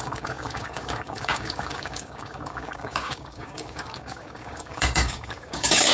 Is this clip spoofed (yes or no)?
yes